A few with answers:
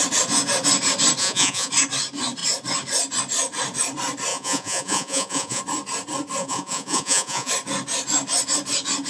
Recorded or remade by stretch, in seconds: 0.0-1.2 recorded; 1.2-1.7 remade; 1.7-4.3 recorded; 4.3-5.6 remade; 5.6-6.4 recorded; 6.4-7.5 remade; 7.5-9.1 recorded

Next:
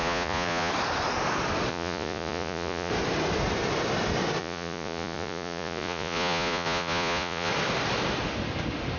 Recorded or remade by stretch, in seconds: 0.0-0.7 remade; 0.7-1.7 recorded; 1.7-2.9 remade; 2.9-4.4 recorded; 4.4-7.5 remade; 7.5-9.0 recorded

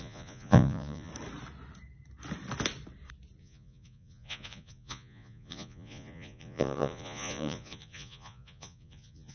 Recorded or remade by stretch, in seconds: 0.0-1.1 remade; 1.1-3.4 recorded; 3.4-9.3 remade